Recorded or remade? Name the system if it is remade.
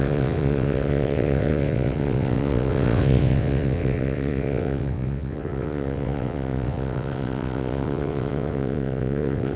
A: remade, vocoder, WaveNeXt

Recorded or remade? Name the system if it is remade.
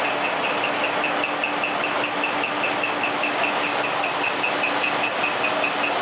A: recorded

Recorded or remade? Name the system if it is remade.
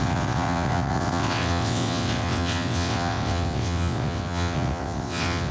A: remade, vocoder, WaveNeXt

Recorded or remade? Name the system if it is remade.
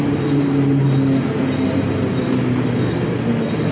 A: recorded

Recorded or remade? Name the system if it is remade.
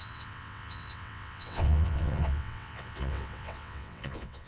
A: remade, vocoder, WaveNeXt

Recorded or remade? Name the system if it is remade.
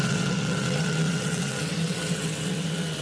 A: remade, vocoder, WaveNeXt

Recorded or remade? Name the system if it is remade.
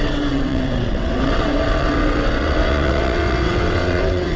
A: remade, vocoder, WaveNeXt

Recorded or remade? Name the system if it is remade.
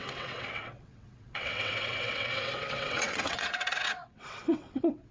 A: remade, vocoder, WaveNeXt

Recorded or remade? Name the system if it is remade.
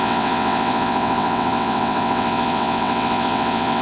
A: remade, vocoder, WaveNeXt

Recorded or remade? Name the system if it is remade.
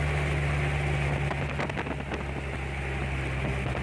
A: recorded